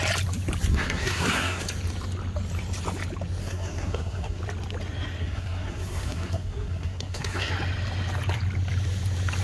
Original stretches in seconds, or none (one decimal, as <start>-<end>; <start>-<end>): 0.0-0.7; 1.6-3.4; 4.4-5.2; 7.5-9.4